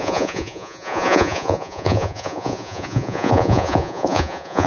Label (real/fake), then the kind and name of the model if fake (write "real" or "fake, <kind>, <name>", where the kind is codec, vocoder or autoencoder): fake, vocoder, Vocos